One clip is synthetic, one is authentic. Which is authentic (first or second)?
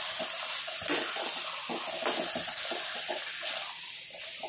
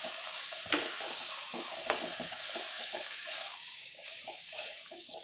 first